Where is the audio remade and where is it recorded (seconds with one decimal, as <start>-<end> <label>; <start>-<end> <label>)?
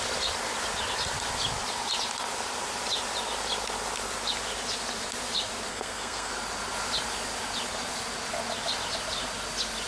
0.0-5.7 recorded; 5.7-6.3 remade; 6.3-9.9 recorded